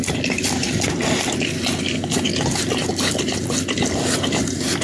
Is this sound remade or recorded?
recorded